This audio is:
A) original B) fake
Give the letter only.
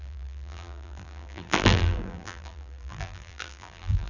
B